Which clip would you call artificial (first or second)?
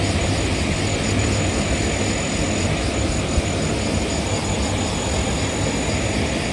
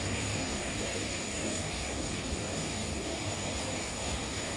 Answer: second